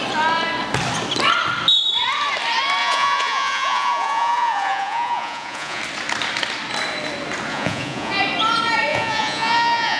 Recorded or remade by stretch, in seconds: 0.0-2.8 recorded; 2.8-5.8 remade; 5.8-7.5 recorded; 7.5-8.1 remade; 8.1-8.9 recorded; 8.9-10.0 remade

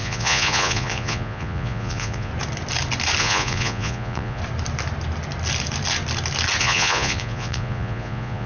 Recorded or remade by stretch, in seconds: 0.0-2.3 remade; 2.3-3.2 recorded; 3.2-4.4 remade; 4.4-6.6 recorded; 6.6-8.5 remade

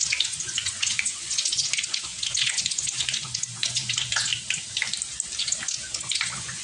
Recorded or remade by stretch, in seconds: 0.0-4.3 remade; 4.3-5.4 recorded; 5.4-6.6 remade

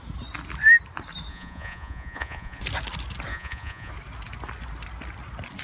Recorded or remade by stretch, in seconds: 0.0-1.3 recorded; 1.3-2.6 remade; 2.6-3.3 recorded; 3.3-3.9 remade; 3.9-5.6 recorded

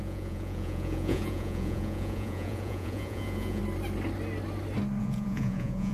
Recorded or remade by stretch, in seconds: 0.0-3.6 remade; 3.6-5.0 recorded; 5.0-5.9 remade

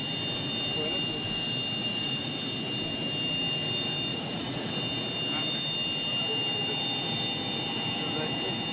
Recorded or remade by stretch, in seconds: 0.0-1.8 recorded; 1.8-2.3 remade; 2.3-4.1 recorded; 4.1-4.7 remade; 4.7-8.7 recorded

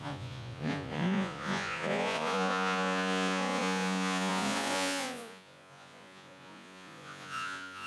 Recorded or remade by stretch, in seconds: 0.0-7.9 remade

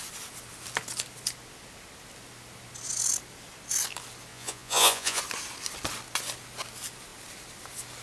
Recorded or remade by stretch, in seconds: 0.0-4.3 recorded; 4.3-5.2 remade; 5.2-8.0 recorded